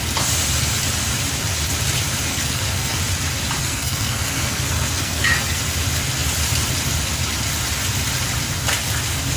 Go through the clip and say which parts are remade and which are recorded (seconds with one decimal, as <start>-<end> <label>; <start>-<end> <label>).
0.0-2.3 recorded; 2.3-3.0 remade; 3.0-3.6 recorded; 3.6-5.6 remade; 5.6-9.4 recorded